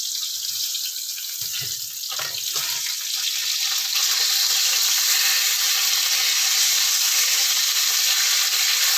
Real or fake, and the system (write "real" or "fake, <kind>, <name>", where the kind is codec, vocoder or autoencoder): real